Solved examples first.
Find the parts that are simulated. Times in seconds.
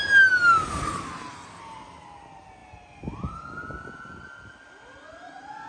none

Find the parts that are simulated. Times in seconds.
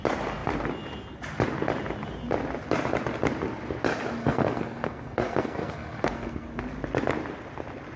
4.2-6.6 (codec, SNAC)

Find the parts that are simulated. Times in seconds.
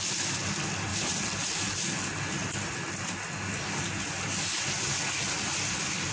none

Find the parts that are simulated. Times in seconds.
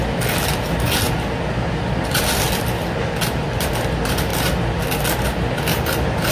none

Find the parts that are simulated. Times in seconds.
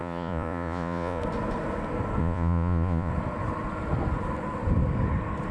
0.0-1.2 (vocoder, Vocos); 2.2-3.1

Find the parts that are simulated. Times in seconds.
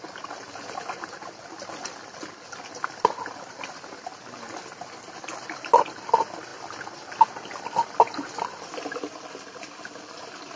none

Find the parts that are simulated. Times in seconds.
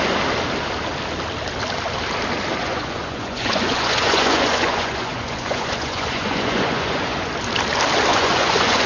2.6-7.3 (vocoder, Vocos); 8.1-8.9